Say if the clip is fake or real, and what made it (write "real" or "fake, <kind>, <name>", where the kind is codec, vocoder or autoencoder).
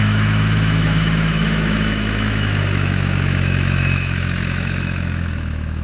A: fake, autoencoder, DAC-VAE